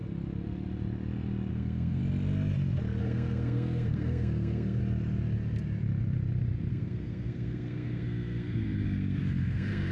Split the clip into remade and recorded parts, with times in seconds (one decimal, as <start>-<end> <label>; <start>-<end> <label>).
0.0-1.5 recorded; 1.5-2.0 remade; 2.0-3.0 recorded; 3.0-4.8 remade; 4.8-6.7 recorded; 6.7-9.9 remade